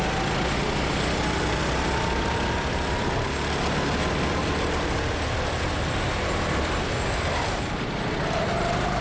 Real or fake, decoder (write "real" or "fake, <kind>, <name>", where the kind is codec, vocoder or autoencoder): real